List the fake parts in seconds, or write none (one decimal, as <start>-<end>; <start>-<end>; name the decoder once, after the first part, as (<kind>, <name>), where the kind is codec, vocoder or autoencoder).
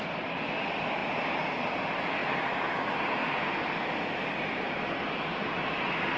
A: none